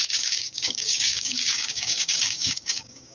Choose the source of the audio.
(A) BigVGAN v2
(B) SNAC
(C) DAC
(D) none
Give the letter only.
C